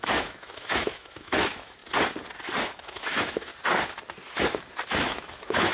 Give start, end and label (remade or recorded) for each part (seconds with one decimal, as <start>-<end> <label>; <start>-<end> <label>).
0.0-1.8 remade; 1.8-2.6 recorded; 2.6-3.5 remade; 3.5-4.9 recorded; 4.9-5.7 remade

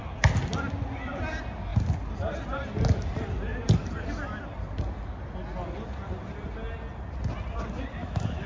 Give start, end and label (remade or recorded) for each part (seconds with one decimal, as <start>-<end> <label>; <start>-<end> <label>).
0.0-8.0 recorded; 8.0-8.5 remade

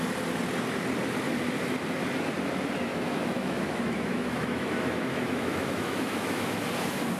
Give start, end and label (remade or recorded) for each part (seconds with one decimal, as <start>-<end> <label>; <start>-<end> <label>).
0.0-2.9 recorded; 2.9-6.6 remade; 6.6-7.2 recorded

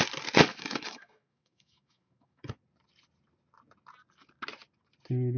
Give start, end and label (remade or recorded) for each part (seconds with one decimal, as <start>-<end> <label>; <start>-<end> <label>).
0.0-0.5 recorded; 0.5-2.5 remade; 2.5-5.4 recorded

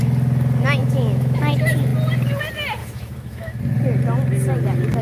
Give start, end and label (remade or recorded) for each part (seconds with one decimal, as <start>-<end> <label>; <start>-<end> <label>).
0.0-0.8 recorded; 0.8-1.4 remade; 1.4-2.8 recorded; 2.8-3.6 remade; 3.6-5.0 recorded